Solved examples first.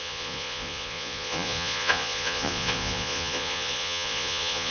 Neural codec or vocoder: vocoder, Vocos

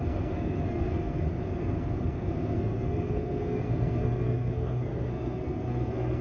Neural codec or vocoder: codec, SNAC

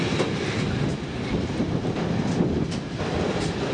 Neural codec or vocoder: none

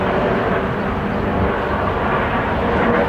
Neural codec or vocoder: none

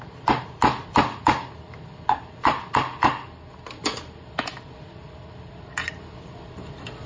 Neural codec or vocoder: none